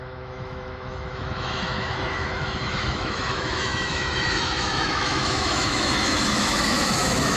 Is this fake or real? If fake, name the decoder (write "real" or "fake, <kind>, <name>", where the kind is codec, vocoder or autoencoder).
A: fake, autoencoder, DAC-VAE